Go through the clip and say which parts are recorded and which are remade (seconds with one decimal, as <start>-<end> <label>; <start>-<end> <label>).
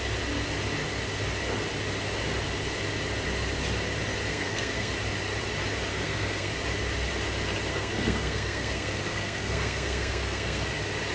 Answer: 0.0-4.3 recorded; 4.3-4.9 remade; 4.9-5.9 recorded; 5.9-6.5 remade; 6.5-7.7 recorded; 7.7-10.7 remade; 10.7-11.1 recorded